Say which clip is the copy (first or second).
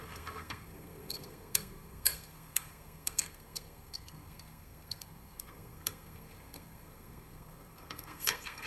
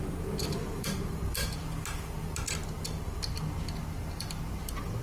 first